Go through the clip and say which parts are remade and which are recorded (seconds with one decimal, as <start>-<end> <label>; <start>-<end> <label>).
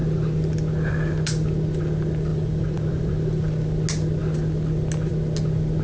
0.0-2.3 recorded; 2.3-3.8 remade; 3.8-5.8 recorded